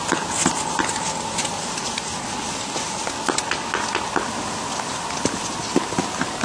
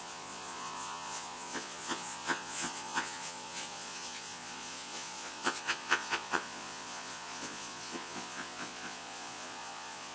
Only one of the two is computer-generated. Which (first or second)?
second